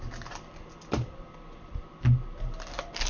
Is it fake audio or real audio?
real